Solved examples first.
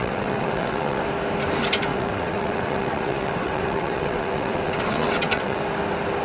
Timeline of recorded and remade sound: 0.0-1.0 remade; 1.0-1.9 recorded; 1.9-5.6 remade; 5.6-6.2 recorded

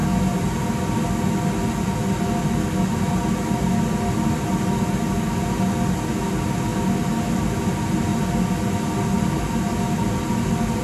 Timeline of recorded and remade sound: 0.0-10.8 recorded

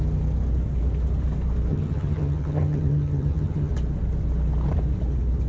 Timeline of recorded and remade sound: 0.0-1.7 recorded; 1.7-3.7 remade; 3.7-5.5 recorded

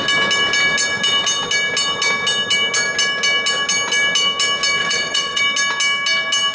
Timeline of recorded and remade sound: 0.0-4.8 recorded; 4.8-5.4 remade; 5.4-6.5 recorded

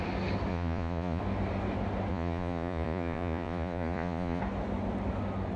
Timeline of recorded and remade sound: 0.0-0.5 recorded; 0.5-1.2 remade; 1.2-2.1 recorded; 2.1-4.4 remade; 4.4-5.6 recorded

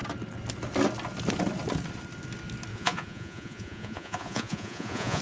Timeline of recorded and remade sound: 0.0-2.7 recorded; 2.7-5.2 remade

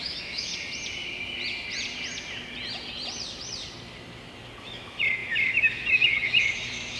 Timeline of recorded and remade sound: 0.0-0.5 remade; 0.5-4.6 recorded; 4.6-7.0 remade

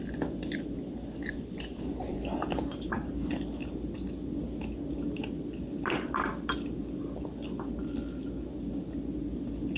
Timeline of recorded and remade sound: 0.0-9.8 recorded